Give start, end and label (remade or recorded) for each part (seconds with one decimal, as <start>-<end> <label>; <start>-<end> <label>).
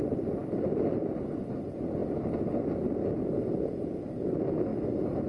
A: 0.0-5.3 recorded